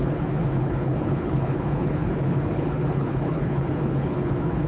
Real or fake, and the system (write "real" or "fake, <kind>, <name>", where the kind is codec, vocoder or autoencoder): fake, codec, HILCodec